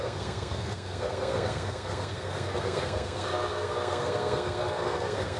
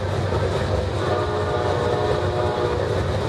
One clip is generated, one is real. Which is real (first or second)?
second